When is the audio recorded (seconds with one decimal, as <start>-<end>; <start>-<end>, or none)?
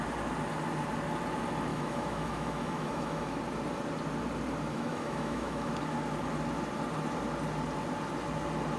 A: 0.0-1.7; 3.4-4.7; 5.7-8.8